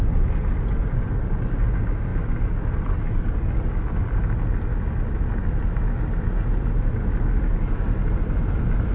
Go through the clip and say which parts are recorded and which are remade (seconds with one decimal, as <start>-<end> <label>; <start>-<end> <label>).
0.0-8.9 recorded